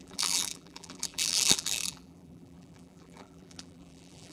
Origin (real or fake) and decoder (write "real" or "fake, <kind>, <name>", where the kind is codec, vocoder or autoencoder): fake, vocoder, BigVGAN v2